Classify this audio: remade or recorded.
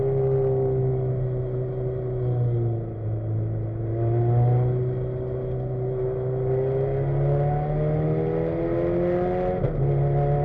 recorded